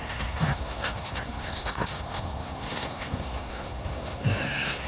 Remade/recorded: remade